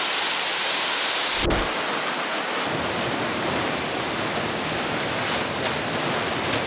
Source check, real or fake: real